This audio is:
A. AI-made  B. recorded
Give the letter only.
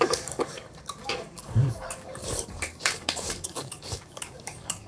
A